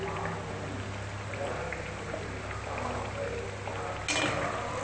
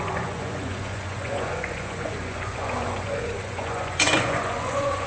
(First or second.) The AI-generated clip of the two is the second